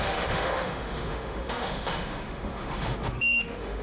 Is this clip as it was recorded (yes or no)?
no